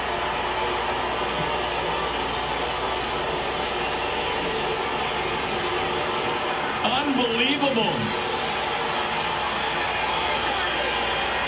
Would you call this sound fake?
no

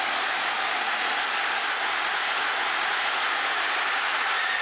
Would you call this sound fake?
no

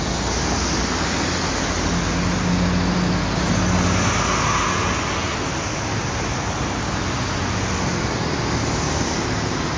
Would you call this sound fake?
no